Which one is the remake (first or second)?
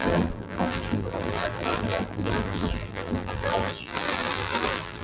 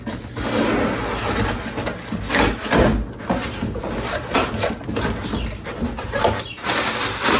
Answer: first